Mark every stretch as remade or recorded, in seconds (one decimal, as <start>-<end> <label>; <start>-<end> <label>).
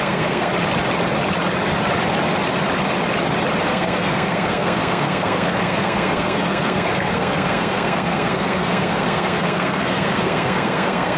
0.0-0.5 remade; 0.5-3.6 recorded; 3.6-11.2 remade